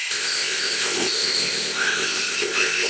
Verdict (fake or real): fake